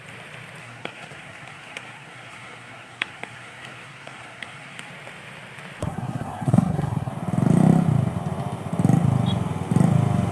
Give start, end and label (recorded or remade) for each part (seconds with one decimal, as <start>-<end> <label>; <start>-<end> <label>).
0.0-0.6 recorded; 0.6-4.9 remade; 4.9-5.8 recorded; 5.8-7.1 remade; 7.1-10.3 recorded